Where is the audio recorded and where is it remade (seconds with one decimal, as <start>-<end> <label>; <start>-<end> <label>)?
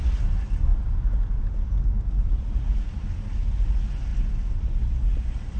0.0-5.6 recorded